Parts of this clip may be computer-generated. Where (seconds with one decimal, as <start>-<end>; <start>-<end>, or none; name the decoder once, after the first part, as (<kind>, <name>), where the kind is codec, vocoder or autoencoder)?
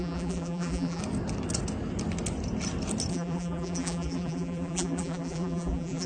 0.0-1.0 (vocoder, BigVGAN v2); 3.1-6.1